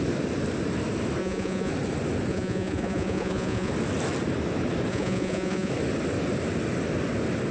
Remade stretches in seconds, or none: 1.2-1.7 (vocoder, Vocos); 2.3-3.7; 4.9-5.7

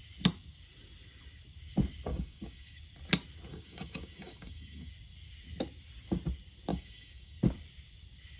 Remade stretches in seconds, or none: 2.1-2.8 (codec, DAC); 3.5-4.9; 6.7-7.4